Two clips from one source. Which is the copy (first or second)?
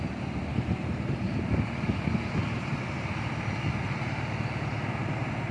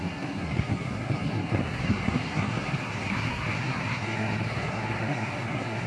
second